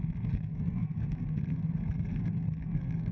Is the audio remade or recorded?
remade